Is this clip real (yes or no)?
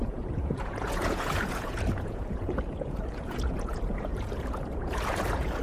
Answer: no